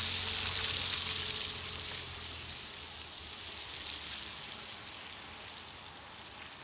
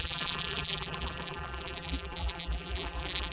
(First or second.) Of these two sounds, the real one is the first